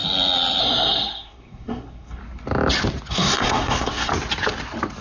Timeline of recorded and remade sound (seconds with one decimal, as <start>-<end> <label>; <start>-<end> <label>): 0.0-0.6 recorded; 0.6-2.2 remade; 2.2-3.1 recorded; 3.1-4.1 remade; 4.1-5.0 recorded

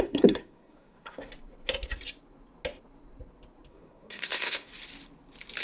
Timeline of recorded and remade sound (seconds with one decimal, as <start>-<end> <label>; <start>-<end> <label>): 0.0-1.3 remade; 1.3-3.7 recorded; 3.7-4.7 remade; 4.7-5.6 recorded

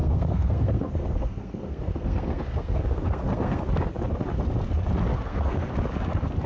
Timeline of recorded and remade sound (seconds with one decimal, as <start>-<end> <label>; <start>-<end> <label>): 0.0-3.7 remade; 3.7-5.1 recorded; 5.1-5.7 remade; 5.7-6.5 recorded